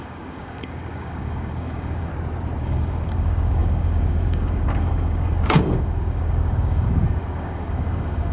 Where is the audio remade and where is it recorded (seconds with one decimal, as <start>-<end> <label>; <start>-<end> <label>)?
0.0-2.1 remade; 2.1-2.6 recorded; 2.6-8.3 remade